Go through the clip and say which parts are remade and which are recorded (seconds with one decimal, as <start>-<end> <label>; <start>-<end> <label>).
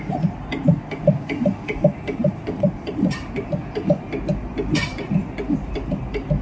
0.0-2.2 recorded; 2.2-3.6 remade; 3.6-6.4 recorded